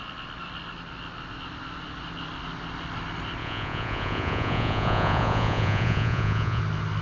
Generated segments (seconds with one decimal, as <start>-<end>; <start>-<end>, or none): 3.4-6.6